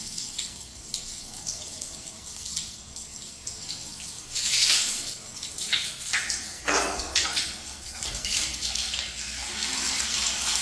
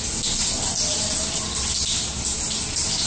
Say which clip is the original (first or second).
second